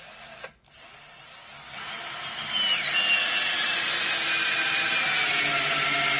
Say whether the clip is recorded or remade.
recorded